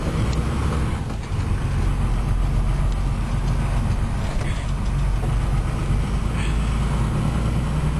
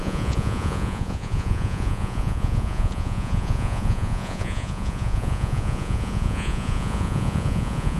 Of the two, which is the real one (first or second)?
first